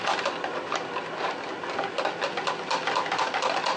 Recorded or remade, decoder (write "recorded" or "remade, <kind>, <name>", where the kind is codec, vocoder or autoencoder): recorded